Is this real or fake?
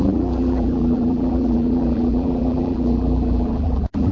fake